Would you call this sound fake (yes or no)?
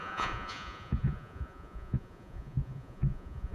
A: yes